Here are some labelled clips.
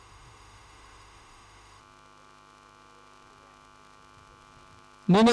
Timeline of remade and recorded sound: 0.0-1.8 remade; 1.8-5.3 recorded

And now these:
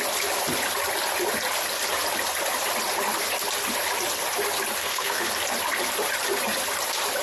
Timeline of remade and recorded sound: 0.0-4.8 recorded; 4.8-5.3 remade; 5.3-7.2 recorded

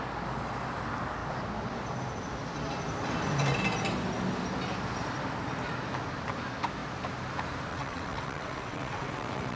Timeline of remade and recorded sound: 0.0-7.7 recorded; 7.7-9.6 remade

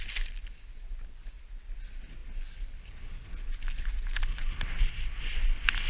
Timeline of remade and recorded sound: 0.0-5.9 recorded